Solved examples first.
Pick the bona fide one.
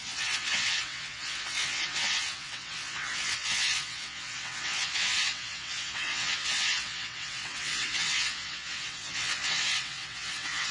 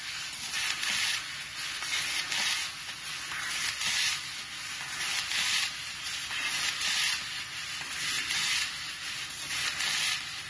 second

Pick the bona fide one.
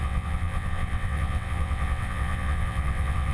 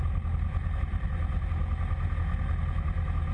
second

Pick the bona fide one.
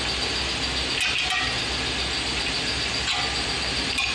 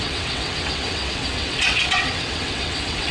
first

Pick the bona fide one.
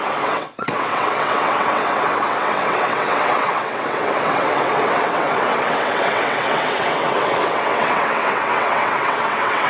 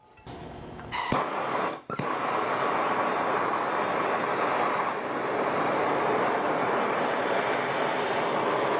second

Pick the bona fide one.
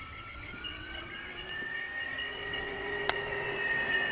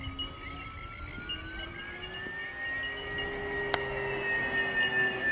second